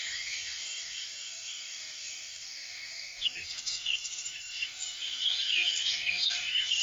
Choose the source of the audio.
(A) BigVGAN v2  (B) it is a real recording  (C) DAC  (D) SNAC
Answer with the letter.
C